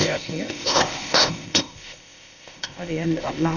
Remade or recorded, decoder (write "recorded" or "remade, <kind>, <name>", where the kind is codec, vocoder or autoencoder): remade, codec, ZipCodec